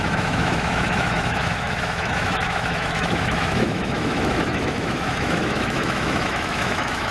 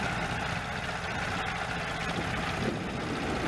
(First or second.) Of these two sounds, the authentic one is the second